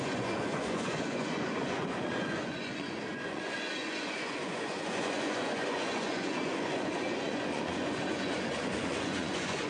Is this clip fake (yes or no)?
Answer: yes